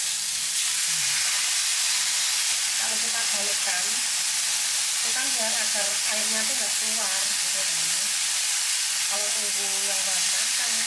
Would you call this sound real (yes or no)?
yes